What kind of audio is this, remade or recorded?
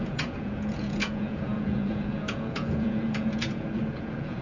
remade